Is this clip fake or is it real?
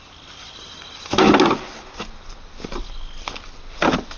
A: real